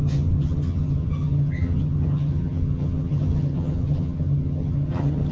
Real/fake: fake